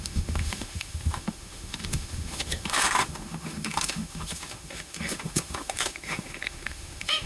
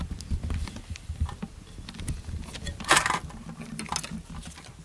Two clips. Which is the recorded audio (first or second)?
second